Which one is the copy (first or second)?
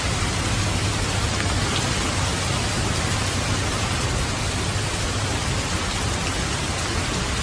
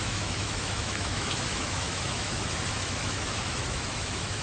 second